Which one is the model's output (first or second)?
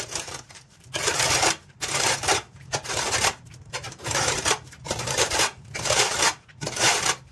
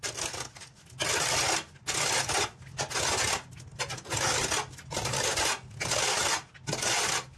first